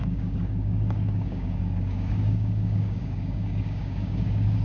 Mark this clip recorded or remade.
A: remade